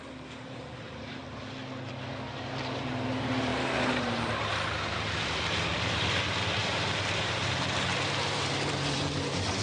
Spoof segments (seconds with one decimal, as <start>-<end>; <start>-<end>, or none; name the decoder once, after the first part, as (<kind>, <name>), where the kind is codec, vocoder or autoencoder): 0.0-1.2 (vocoder, BigVGAN v2); 2.4-9.6